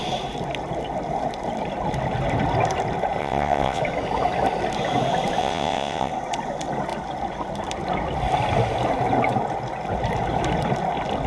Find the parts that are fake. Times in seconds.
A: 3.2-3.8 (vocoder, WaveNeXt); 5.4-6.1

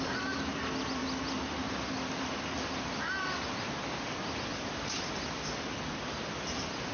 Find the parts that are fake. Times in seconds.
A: none

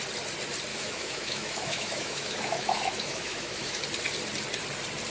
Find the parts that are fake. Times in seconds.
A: 0.7-3.8 (autoencoder, DAC-VAE)

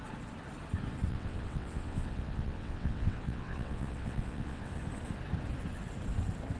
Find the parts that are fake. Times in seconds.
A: 1.1-4.8 (vocoder, WaveNeXt)

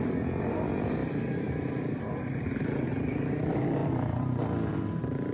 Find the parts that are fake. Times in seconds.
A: 1.0-2.0 (vocoder, BigVGAN v2); 3.8-4.4

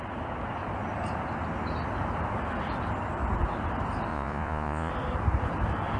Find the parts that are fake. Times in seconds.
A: 4.1-4.9 (vocoder, Vocos)